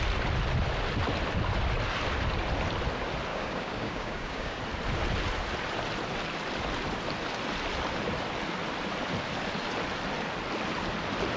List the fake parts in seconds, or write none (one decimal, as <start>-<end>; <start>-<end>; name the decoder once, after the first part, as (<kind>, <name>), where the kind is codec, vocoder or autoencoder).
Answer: 3.3-4.6 (codec, DAC)